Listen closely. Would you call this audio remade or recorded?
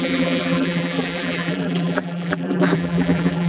remade